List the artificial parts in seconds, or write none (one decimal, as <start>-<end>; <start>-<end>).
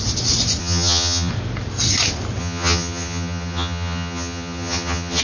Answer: 0.6-1.3; 2.4-5.2